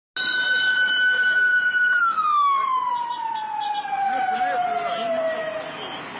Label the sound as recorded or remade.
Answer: recorded